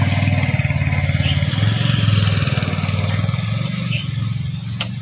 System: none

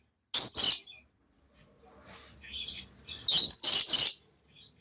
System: none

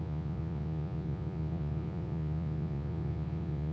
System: vocoder, Vocos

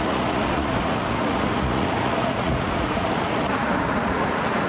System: vocoder, Vocos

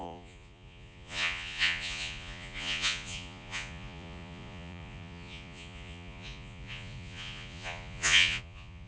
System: vocoder, Vocos